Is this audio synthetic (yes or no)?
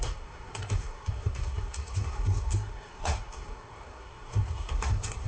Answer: yes